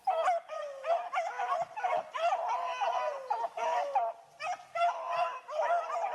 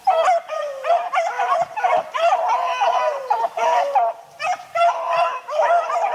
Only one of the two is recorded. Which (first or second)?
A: first